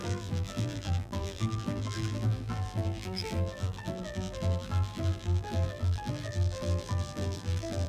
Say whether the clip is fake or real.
fake